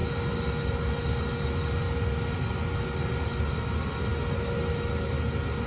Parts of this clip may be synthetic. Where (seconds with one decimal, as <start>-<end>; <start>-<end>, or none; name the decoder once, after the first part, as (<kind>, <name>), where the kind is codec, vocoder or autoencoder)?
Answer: none